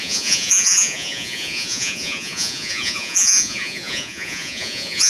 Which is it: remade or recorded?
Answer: remade